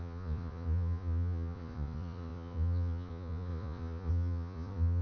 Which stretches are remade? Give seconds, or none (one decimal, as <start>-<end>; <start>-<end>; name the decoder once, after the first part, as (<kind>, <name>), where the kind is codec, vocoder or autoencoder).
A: 0.0-5.0 (vocoder, Vocos)